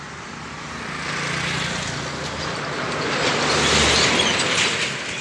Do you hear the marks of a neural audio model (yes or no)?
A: no